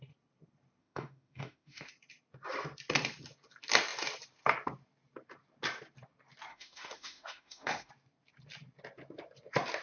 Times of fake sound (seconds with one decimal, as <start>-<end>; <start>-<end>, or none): 0.8-1.9; 6.5-7.9